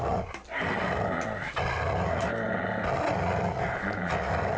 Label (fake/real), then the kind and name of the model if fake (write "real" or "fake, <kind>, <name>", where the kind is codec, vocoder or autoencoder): real